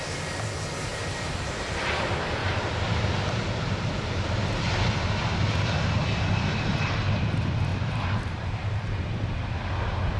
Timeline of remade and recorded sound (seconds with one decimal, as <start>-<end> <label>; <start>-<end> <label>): 0.0-0.9 recorded; 0.9-1.8 remade; 1.8-2.4 recorded; 2.4-4.7 remade; 4.7-7.7 recorded; 7.7-9.1 remade; 9.1-10.2 recorded